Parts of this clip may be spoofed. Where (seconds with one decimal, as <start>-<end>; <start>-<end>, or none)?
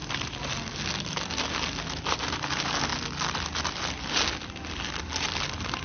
none